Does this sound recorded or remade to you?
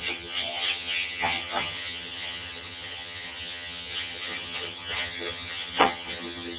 remade